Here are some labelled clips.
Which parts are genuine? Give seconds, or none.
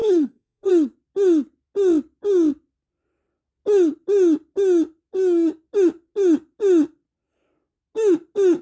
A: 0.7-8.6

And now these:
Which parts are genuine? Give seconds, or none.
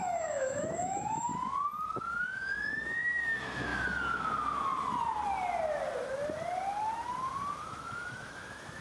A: 1.3-2.2; 3.7-7.6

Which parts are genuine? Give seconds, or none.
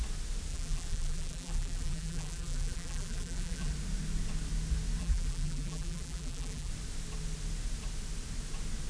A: 0.0-0.5; 3.7-5.0; 6.7-8.9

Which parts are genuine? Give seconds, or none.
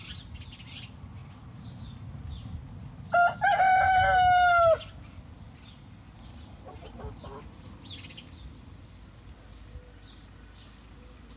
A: 0.0-1.2; 2.3-11.4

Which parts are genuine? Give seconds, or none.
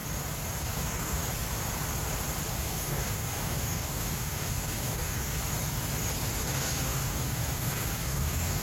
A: 0.0-0.6; 1.2-2.5; 5.4-6.4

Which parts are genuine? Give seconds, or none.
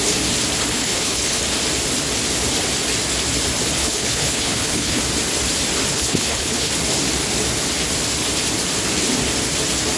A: 0.0-0.7; 1.4-3.8; 5.0-5.9; 6.7-10.0